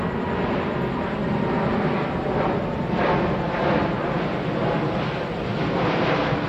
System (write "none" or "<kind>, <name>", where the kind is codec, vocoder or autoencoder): none